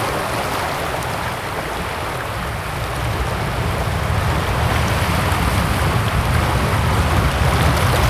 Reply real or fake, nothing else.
real